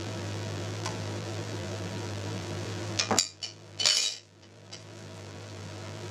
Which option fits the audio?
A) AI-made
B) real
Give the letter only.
A